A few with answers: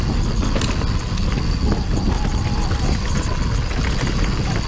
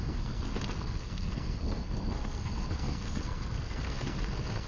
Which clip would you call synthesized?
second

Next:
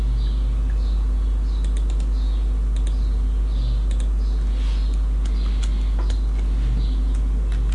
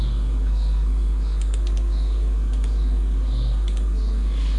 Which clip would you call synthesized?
second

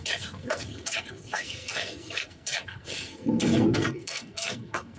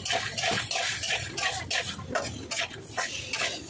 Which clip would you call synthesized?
first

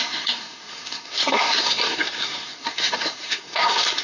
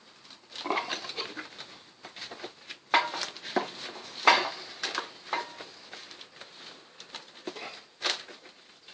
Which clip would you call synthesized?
first